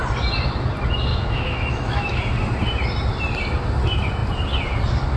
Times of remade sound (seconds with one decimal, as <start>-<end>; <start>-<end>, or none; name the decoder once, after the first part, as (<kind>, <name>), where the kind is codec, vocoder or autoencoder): 1.1-2.2 (autoencoder, DAC-VAE)